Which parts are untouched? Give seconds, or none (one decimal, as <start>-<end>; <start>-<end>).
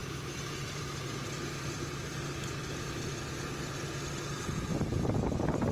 0.9-5.7